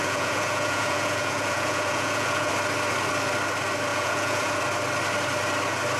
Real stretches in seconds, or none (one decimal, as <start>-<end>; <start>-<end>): 2.5-3.9; 4.6-6.0